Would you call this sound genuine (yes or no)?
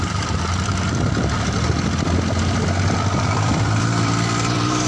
no